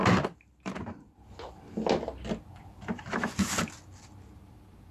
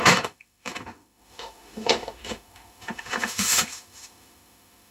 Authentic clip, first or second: first